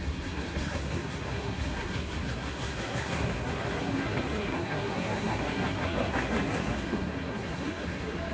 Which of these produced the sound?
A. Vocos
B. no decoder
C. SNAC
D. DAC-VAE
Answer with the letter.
C